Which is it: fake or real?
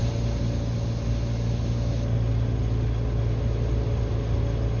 real